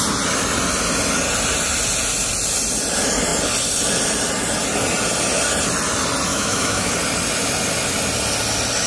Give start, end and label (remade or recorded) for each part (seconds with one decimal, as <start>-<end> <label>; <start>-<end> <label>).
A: 0.0-6.3 recorded; 6.3-6.9 remade; 6.9-8.9 recorded